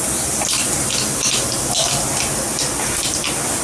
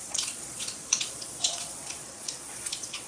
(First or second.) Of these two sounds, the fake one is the second